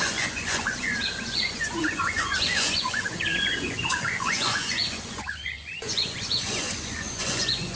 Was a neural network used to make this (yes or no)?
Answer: yes